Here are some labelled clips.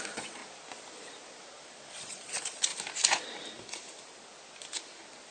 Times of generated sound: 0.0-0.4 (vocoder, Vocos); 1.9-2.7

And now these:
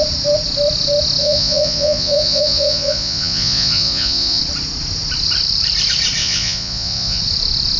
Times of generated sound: 1.2-4.4 (vocoder, Vocos); 6.2-7.2

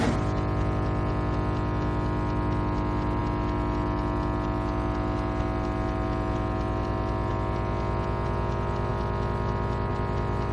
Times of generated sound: none

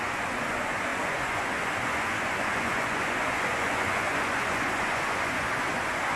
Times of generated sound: 0.0-6.2 (vocoder, Vocos)

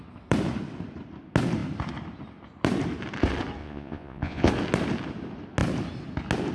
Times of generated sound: 3.6-4.5 (vocoder, Vocos)

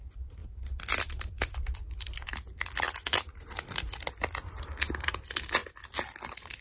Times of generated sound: none